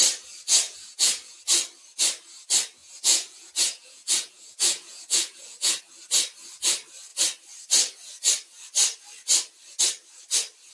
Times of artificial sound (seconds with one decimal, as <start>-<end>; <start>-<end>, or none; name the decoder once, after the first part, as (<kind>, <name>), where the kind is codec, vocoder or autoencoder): 0.5-1.4 (vocoder, Vocos); 2.8-5.8